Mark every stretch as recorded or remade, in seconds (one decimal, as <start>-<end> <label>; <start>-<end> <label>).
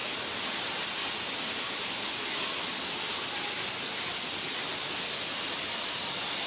0.0-6.5 recorded